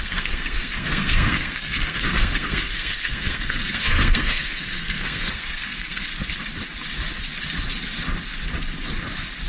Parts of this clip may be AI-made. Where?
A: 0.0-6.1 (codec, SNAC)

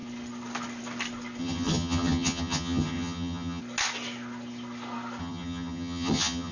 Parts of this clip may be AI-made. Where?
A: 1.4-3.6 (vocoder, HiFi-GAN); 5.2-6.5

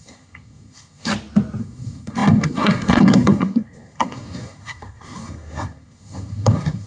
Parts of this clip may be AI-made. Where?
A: 0.0-1.1 (codec, SNAC); 1.6-6.9

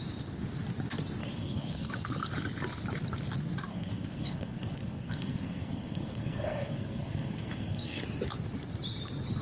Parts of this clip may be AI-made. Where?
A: 1.2-1.9 (codec, SNAC); 3.7-8.0

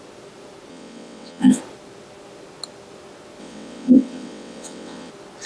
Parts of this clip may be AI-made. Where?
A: 0.7-1.6 (vocoder, WaveNeXt); 3.4-5.1

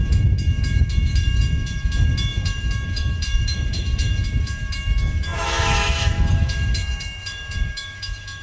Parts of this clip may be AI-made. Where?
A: 0.0-8.4 (autoencoder, DAC-VAE)

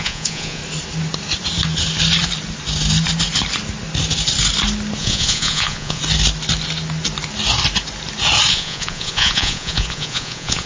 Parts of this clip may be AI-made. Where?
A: 0.0-0.6 (vocoder, Vocos); 5.0-6.0; 8.5-10.7

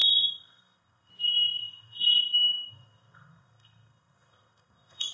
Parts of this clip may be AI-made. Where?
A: 0.0-1.1 (codec, SNAC); 1.6-5.1